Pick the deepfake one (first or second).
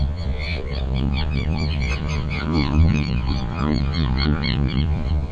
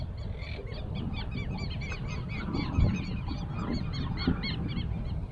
first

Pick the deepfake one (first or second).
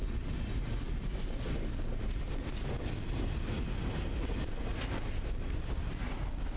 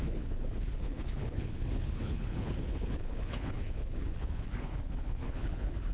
second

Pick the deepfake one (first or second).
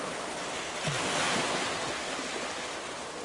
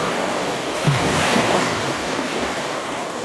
second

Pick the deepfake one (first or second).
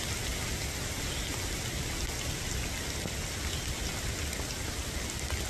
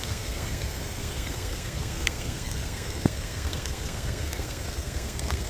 second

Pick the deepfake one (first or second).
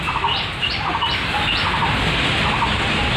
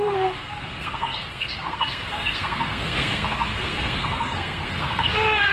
second